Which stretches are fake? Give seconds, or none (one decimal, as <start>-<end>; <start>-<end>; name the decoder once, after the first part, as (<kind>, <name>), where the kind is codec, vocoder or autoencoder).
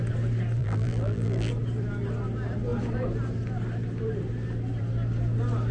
0.6-1.5 (vocoder, BigVGAN v2)